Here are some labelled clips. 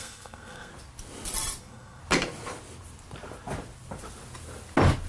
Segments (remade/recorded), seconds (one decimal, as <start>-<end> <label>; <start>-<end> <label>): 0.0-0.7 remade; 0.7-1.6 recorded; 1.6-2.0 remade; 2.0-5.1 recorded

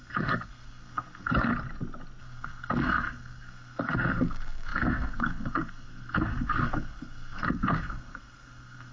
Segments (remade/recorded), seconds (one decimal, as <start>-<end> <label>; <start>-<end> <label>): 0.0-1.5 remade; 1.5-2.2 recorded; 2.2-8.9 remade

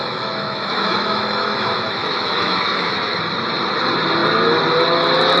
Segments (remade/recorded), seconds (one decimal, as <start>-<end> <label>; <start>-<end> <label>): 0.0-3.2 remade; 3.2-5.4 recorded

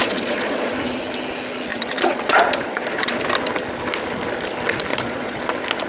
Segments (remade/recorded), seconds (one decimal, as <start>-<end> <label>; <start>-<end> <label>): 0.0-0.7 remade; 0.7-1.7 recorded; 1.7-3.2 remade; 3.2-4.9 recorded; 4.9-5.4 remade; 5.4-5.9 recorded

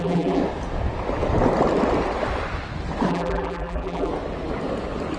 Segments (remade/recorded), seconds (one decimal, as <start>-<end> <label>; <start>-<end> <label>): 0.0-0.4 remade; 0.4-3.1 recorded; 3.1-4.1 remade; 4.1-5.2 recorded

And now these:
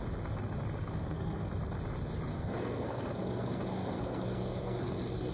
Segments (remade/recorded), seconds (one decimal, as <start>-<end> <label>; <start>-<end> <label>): 0.0-0.9 recorded; 0.9-1.5 remade; 1.5-2.3 recorded; 2.3-5.3 remade

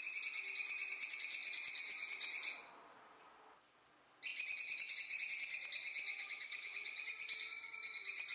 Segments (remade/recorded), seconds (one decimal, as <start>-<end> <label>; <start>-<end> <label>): 0.0-6.1 recorded; 6.1-7.0 remade; 7.0-8.3 recorded